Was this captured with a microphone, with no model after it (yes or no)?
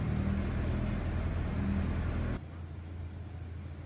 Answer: yes